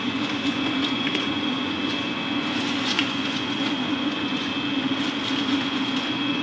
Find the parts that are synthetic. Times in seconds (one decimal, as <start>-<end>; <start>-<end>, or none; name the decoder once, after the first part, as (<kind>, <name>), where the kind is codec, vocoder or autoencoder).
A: 0.0-4.5 (vocoder, Vocos); 5.4-6.4